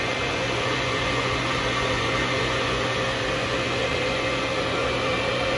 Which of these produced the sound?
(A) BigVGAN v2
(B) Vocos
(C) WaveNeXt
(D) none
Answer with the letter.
B